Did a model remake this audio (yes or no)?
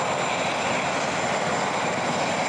no